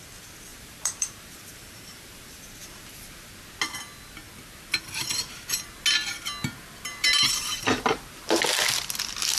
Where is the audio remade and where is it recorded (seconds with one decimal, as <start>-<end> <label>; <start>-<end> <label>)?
0.0-0.5 recorded; 0.5-3.3 remade; 3.3-6.9 recorded; 6.9-8.4 remade; 8.4-9.4 recorded